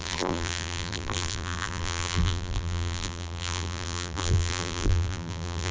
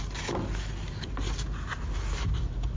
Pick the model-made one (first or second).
first